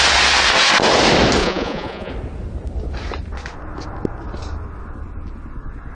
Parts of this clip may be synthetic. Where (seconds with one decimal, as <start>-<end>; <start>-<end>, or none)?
1.4-2.1